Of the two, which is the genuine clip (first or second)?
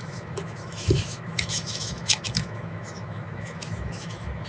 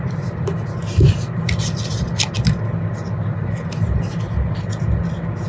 second